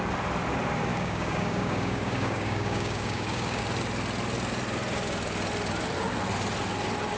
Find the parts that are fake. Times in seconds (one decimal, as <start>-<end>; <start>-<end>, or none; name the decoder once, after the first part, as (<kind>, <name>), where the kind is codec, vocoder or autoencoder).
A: 0.9-3.6 (codec, DAC)